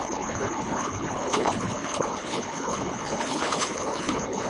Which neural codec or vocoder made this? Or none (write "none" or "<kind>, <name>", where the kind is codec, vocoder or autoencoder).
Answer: codec, HILCodec